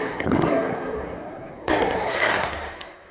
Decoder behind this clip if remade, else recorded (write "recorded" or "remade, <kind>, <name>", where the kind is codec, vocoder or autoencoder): remade, codec, SNAC